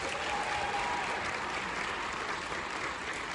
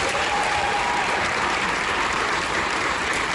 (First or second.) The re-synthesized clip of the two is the second